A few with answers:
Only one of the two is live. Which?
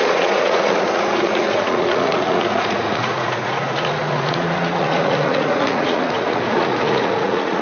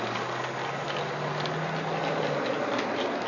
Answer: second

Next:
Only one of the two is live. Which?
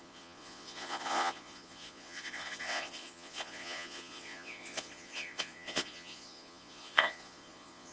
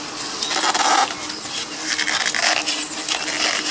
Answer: second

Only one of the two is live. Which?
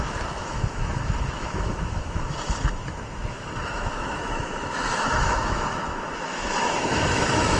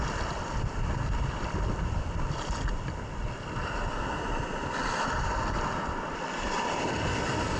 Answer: second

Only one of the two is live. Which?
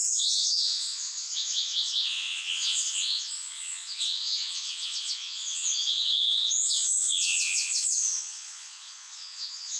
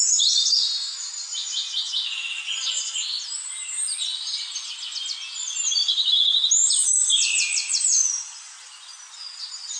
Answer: second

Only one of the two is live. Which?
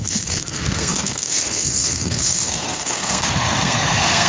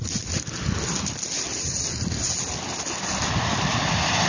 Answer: second